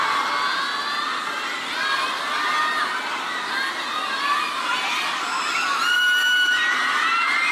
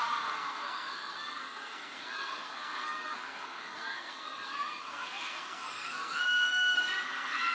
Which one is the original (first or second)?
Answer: first